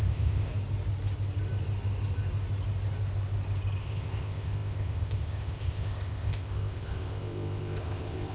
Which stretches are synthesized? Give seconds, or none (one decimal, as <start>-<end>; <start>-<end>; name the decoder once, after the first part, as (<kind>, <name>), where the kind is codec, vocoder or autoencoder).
0.0-0.5 (codec, ZipCodec); 3.8-8.3